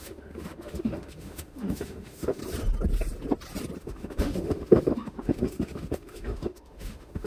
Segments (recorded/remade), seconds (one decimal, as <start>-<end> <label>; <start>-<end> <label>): 0.0-2.4 remade; 2.4-3.8 recorded; 3.8-7.3 remade